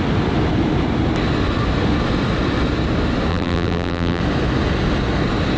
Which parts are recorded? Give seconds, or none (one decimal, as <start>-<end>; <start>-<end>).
0.0-3.3; 4.2-5.6